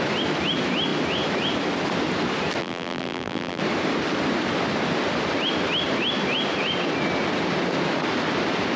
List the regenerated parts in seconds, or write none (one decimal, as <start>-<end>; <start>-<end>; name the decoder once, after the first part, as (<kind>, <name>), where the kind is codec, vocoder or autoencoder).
2.6-3.6 (vocoder, BigVGAN v2)